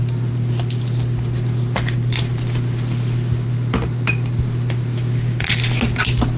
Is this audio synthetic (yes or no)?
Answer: no